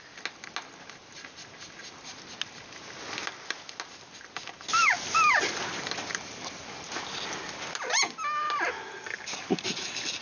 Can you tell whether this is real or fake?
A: real